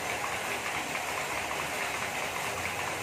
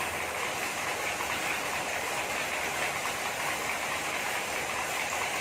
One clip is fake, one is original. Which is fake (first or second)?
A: second